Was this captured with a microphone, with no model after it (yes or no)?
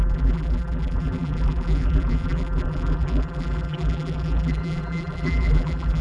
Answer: no